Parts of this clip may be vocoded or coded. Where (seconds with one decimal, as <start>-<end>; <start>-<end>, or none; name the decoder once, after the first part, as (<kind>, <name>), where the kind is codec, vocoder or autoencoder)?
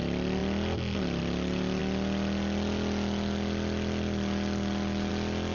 none